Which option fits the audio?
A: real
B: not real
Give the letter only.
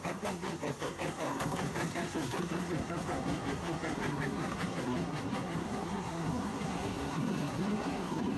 B